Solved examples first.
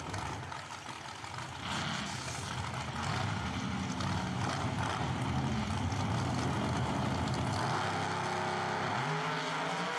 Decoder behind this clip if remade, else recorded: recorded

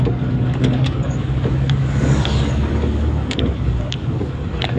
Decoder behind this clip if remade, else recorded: remade, codec, DAC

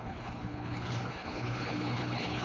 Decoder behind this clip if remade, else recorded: remade, codec, HILCodec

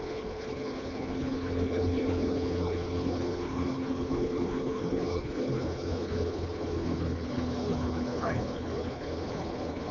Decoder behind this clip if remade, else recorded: remade, codec, HILCodec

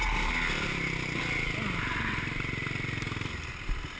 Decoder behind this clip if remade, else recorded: recorded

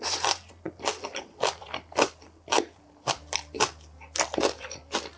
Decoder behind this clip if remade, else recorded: remade, vocoder, BigVGAN v2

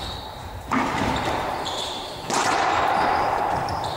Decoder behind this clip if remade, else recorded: remade, vocoder, BigVGAN v2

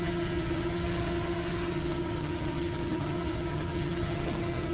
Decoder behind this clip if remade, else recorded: remade, vocoder, HiFi-GAN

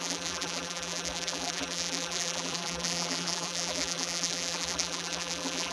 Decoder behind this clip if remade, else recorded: remade, vocoder, BigVGAN v2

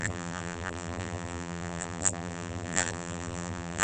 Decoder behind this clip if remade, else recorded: remade, vocoder, BigVGAN v2